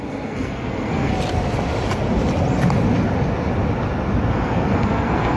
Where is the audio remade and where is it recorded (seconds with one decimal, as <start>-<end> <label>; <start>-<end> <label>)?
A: 0.0-1.1 remade; 1.1-4.3 recorded; 4.3-5.4 remade